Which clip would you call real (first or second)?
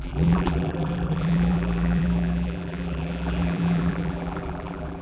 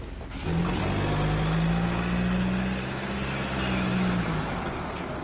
second